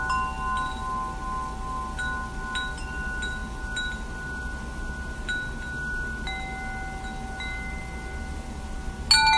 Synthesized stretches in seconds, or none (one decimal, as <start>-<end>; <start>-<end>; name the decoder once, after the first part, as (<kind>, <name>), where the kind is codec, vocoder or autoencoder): none